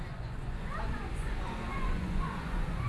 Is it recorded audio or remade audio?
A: remade